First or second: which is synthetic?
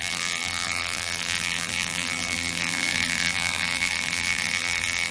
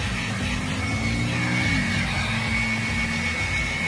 first